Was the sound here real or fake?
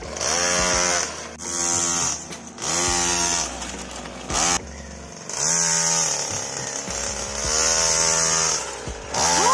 real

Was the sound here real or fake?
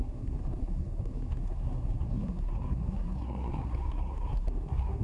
fake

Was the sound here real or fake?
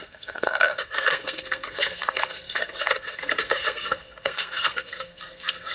fake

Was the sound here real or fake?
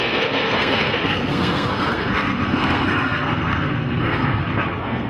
fake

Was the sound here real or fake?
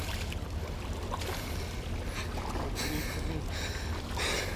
real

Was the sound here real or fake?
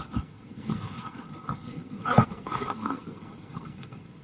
fake